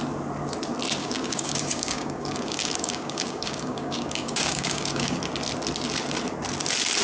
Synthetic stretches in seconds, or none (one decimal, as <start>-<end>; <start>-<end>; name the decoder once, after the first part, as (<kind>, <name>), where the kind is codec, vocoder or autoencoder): 1.0-5.2 (codec, DAC)